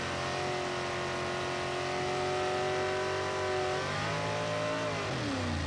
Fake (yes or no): no